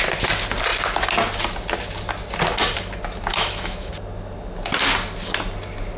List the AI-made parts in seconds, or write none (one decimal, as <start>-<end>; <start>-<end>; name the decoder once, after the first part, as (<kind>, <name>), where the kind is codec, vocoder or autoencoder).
3.3-3.9 (autoencoder, DAC-VAE)